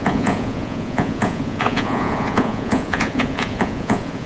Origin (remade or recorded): remade